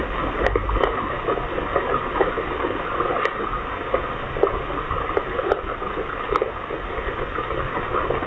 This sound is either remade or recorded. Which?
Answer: recorded